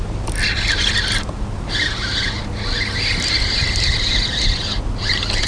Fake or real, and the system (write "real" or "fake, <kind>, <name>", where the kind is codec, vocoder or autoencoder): real